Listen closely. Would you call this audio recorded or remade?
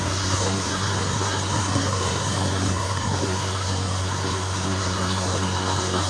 remade